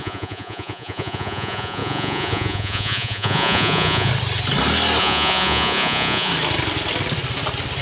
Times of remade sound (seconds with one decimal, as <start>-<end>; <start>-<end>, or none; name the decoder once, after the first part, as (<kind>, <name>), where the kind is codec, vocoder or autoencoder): 0.0-4.1 (vocoder, Vocos); 5.0-6.3